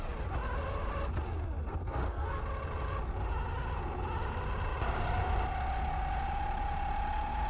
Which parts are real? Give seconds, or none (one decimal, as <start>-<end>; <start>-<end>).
0.0-1.8; 2.4-7.5